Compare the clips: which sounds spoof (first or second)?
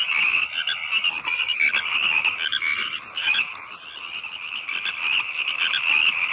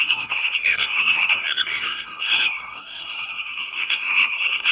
second